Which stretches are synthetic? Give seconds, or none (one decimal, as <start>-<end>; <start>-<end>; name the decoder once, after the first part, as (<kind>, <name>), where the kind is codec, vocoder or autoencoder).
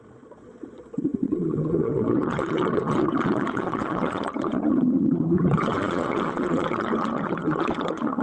0.0-8.2 (vocoder, Vocos)